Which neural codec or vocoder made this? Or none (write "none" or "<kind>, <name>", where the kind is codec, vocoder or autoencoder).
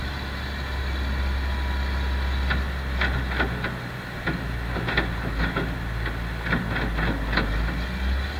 none